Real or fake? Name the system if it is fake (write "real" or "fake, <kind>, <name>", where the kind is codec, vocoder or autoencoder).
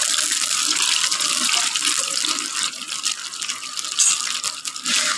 real